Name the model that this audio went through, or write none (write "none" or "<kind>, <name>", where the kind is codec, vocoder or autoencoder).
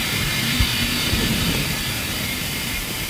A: vocoder, BigVGAN v2